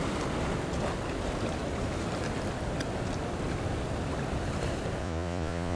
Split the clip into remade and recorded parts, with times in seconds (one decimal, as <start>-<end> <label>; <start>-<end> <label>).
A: 0.0-5.0 recorded; 5.0-5.8 remade